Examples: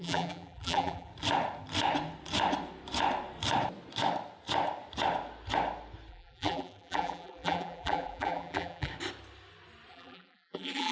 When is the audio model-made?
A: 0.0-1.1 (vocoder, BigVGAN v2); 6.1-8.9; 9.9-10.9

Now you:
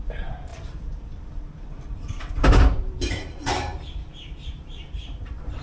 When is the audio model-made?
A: 0.0-3.7 (vocoder, BigVGAN v2); 4.4-5.6

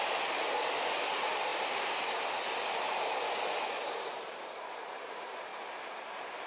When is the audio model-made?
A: 1.5-2.3 (vocoder, BigVGAN v2)

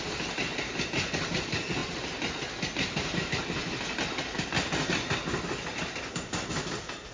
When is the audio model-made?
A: none

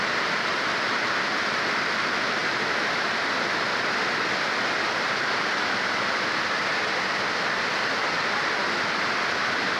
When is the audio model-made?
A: none

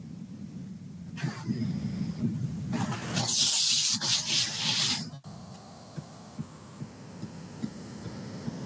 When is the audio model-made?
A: 0.7-1.4 (vocoder, BigVGAN v2)